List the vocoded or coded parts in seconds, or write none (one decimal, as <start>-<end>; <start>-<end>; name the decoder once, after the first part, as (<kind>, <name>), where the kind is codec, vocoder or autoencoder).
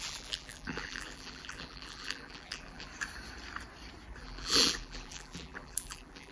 0.0-2.9 (vocoder, BigVGAN v2); 4.2-6.3